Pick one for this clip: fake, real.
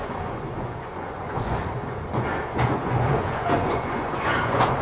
fake